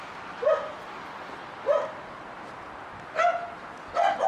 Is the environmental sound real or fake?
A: real